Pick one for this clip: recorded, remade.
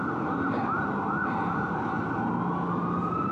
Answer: recorded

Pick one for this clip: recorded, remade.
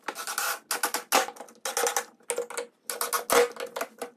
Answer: recorded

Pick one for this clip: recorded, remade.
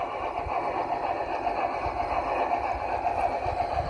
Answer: recorded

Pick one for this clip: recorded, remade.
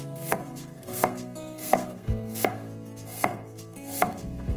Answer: remade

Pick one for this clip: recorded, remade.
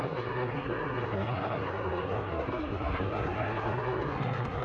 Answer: remade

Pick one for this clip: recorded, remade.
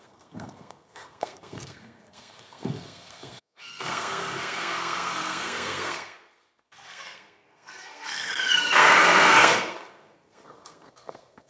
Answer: remade